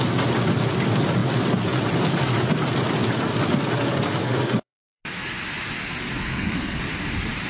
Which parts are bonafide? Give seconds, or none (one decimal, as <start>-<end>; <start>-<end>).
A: 0.0-4.2; 5.0-6.2; 6.8-7.5

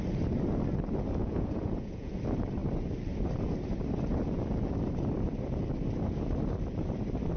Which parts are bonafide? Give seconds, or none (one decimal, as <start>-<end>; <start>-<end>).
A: 0.0-1.2; 2.1-7.4

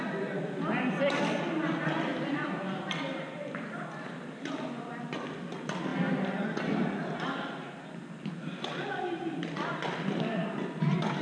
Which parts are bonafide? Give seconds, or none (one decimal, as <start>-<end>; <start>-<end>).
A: 0.0-11.2

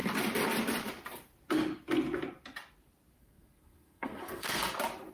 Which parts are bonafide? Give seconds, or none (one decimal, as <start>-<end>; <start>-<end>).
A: 0.0-3.2; 4.6-5.1

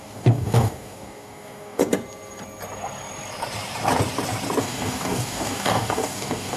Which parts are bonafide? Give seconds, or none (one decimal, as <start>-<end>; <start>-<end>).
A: 1.8-4.6

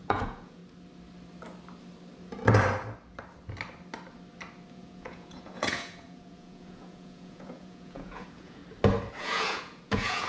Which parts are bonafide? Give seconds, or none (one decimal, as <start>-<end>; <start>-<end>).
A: 0.6-4.7; 8.6-9.1